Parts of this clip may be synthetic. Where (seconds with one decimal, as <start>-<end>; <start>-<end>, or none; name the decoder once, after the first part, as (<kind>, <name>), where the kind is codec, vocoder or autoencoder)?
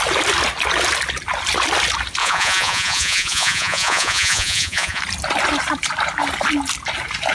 2.2-5.0 (vocoder, Vocos)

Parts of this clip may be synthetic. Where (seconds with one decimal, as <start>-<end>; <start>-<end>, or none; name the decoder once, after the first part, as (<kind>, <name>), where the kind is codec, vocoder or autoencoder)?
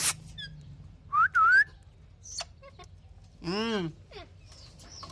none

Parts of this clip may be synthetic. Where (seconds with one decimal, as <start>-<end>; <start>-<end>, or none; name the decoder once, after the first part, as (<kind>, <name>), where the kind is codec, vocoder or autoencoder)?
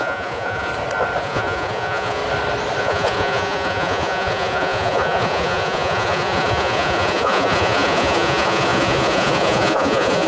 0.0-0.7 (vocoder, Vocos); 1.2-2.2; 2.8-10.3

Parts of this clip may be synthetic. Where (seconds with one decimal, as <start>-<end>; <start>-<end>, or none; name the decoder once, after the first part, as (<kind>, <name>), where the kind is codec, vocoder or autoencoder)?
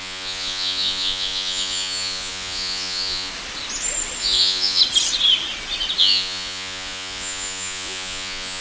0.0-3.3 (vocoder, Vocos); 4.2-4.8; 6.0-8.6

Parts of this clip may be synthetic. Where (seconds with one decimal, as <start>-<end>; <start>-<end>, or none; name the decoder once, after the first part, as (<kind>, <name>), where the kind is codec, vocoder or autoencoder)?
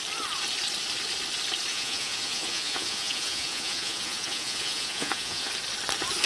1.7-5.5 (vocoder, Vocos)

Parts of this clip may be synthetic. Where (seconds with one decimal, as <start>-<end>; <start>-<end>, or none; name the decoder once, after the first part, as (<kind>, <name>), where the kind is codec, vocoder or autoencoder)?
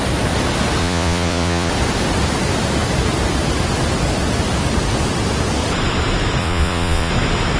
0.8-1.7 (vocoder, Vocos); 6.4-7.1